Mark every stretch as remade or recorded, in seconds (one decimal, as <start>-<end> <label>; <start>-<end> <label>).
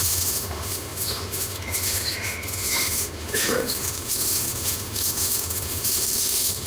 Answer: 0.0-6.7 remade